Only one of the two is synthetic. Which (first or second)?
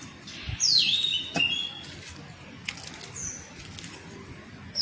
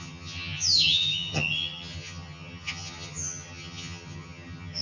second